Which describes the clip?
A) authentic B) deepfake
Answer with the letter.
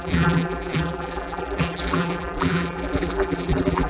B